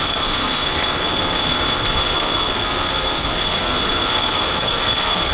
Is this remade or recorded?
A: remade